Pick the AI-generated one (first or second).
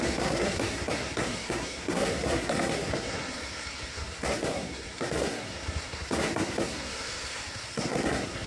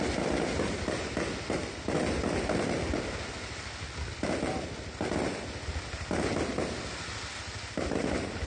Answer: first